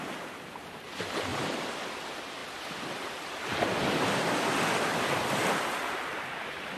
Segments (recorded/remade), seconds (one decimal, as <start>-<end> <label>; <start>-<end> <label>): 0.0-1.3 recorded; 1.3-1.9 remade; 1.9-2.4 recorded; 2.4-4.7 remade; 4.7-6.8 recorded